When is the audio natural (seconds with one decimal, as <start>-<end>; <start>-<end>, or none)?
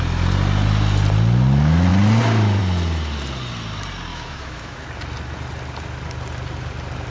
0.0-4.1; 4.8-7.1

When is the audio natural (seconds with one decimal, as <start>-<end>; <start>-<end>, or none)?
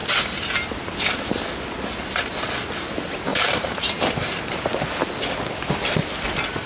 0.0-3.3; 4.8-6.7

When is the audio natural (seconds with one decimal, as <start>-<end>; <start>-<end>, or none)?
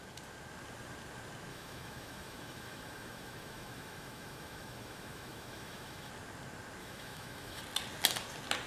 0.0-1.5; 6.1-6.8; 7.6-8.7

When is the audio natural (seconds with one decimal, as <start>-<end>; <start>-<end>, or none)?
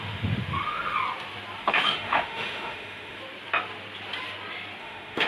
1.0-1.6; 3.2-4.8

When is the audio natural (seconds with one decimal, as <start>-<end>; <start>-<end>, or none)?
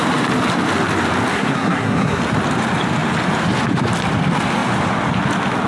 0.0-1.3; 2.2-5.7